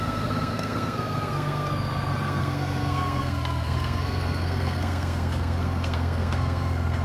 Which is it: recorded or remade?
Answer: remade